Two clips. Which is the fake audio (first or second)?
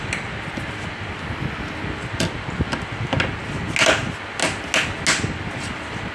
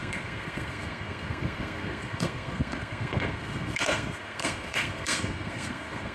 second